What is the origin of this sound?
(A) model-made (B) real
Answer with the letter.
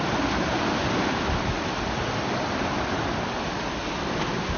B